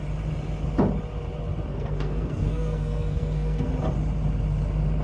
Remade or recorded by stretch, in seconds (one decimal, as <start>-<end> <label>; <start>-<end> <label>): 0.0-1.7 recorded; 1.7-3.7 remade; 3.7-5.0 recorded